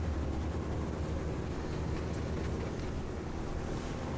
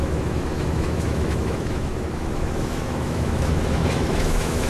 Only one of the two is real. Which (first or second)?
first